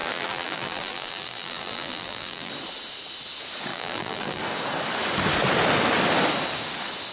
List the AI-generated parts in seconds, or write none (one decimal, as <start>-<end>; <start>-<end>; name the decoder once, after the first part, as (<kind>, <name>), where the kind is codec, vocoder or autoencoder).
0.0-2.5 (vocoder, BigVGAN v2); 3.7-4.4